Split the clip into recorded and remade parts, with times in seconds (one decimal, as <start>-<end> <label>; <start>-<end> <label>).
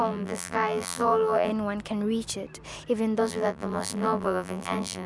0.0-1.5 remade; 1.5-3.2 recorded; 3.2-5.1 remade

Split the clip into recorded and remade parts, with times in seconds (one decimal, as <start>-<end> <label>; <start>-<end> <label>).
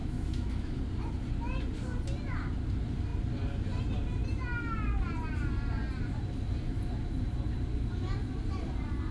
0.0-0.8 remade; 0.8-9.1 recorded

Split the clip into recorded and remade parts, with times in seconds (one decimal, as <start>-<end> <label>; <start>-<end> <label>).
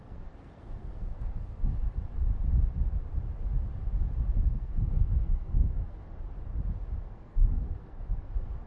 0.0-1.8 remade; 1.8-4.3 recorded; 4.3-6.0 remade; 6.0-7.0 recorded; 7.0-8.7 remade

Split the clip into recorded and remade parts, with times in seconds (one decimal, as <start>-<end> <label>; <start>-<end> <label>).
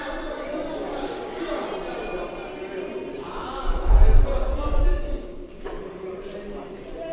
0.0-0.9 recorded; 0.9-1.4 remade; 1.4-3.1 recorded; 3.1-3.6 remade; 3.6-4.9 recorded; 4.9-5.6 remade; 5.6-7.1 recorded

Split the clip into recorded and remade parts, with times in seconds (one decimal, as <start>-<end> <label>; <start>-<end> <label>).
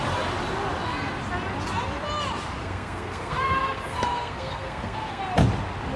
0.0-2.6 recorded; 2.6-5.2 remade; 5.2-6.0 recorded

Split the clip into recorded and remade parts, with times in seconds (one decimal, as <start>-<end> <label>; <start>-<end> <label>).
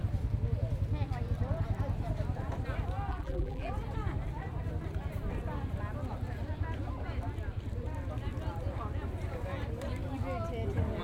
0.0-3.1 recorded; 3.1-3.7 remade; 3.7-11.0 recorded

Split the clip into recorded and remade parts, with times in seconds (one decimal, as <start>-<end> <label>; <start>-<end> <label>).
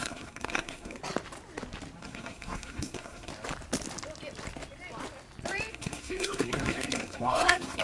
0.0-1.0 remade; 1.0-2.0 recorded; 2.0-3.3 remade; 3.3-5.7 recorded; 5.7-7.8 remade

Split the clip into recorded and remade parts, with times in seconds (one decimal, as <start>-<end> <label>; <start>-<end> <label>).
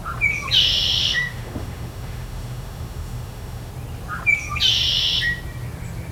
0.0-1.0 recorded; 1.0-3.7 remade; 3.7-6.1 recorded